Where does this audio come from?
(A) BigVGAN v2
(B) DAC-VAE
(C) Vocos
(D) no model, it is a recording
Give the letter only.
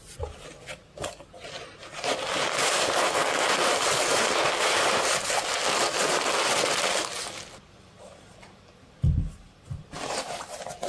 D